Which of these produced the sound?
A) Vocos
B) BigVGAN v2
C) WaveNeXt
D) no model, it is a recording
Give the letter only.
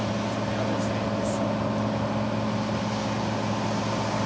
D